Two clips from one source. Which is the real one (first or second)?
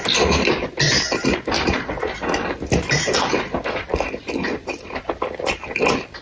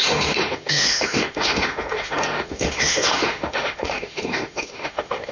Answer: first